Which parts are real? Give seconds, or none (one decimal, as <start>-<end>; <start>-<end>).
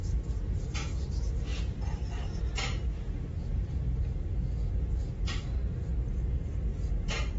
0.0-7.4